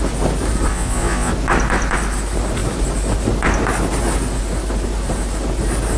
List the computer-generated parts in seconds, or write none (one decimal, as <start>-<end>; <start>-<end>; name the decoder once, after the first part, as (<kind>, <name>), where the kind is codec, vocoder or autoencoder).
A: 0.7-1.3 (vocoder, Vocos)